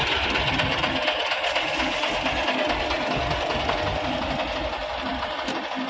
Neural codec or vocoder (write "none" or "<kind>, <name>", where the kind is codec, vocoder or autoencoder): none